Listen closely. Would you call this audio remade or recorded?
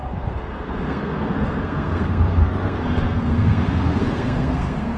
remade